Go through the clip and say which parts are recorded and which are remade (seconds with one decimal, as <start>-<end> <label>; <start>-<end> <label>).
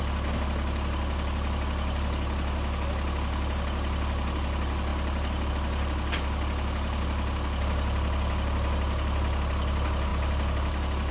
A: 0.0-11.1 recorded